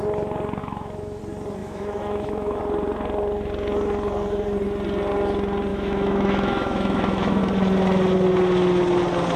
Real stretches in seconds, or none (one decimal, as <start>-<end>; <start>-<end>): 0.0-0.6; 1.2-1.6; 2.6-5.7; 7.4-9.4